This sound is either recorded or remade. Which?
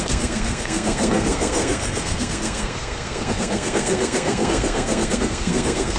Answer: remade